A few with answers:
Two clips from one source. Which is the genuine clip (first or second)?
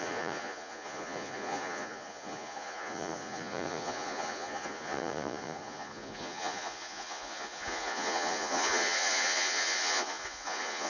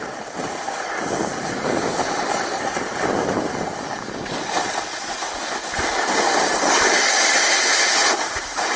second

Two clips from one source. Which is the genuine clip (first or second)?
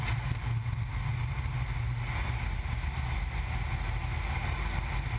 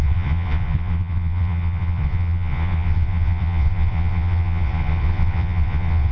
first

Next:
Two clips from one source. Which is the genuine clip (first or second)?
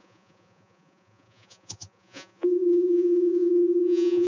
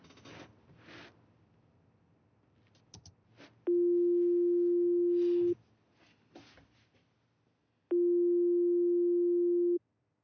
second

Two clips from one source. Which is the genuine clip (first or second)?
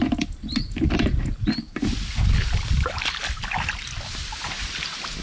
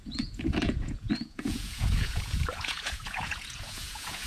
first